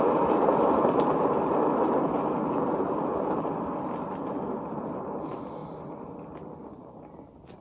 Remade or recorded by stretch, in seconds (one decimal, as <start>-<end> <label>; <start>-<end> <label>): 0.0-7.6 recorded